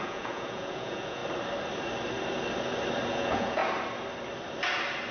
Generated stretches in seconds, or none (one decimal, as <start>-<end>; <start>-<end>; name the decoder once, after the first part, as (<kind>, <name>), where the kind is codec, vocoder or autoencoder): 0.0-1.2 (vocoder, Vocos); 3.1-3.6